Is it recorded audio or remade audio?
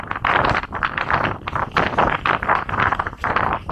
remade